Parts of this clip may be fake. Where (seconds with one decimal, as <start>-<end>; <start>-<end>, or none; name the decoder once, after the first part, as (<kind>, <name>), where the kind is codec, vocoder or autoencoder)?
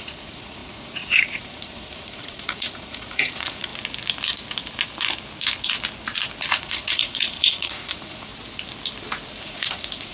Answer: 0.0-3.7 (vocoder, Vocos); 6.5-8.3; 9.4-10.1